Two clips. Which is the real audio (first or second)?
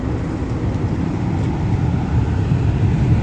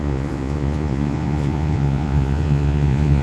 first